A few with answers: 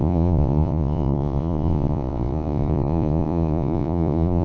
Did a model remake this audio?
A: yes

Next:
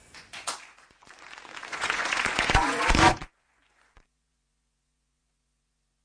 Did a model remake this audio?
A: yes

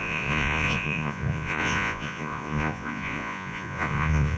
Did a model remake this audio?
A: yes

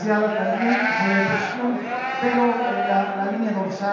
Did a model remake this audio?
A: no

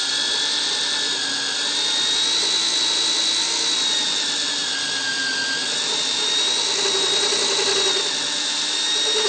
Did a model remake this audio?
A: no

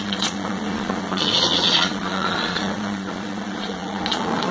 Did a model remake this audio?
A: yes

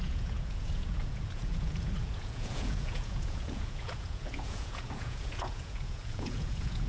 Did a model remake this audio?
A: yes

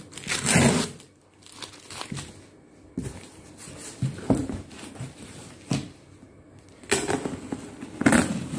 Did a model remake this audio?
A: no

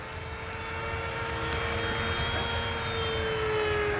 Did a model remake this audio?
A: no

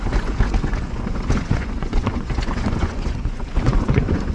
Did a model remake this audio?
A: yes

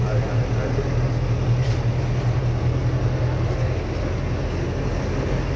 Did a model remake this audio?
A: no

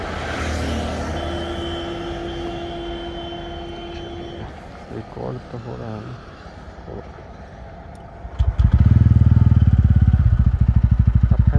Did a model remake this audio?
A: no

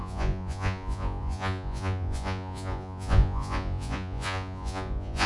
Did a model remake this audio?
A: yes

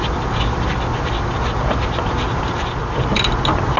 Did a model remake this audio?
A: no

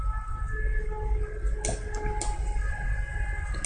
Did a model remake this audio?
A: no